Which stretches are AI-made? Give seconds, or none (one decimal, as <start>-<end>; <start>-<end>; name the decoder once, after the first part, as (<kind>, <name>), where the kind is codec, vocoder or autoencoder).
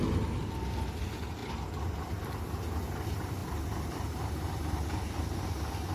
none